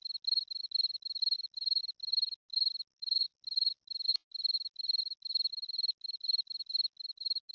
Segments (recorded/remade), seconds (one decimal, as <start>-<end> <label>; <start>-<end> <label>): 0.0-7.5 recorded